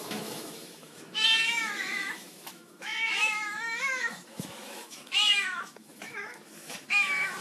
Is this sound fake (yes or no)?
yes